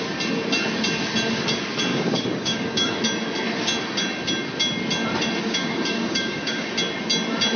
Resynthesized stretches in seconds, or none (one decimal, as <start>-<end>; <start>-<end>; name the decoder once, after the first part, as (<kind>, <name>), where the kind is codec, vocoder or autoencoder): 1.9-3.0 (codec, DAC); 5.4-6.7